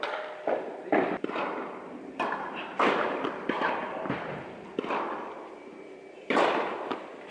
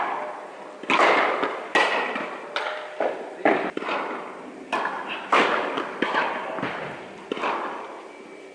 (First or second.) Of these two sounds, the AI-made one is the first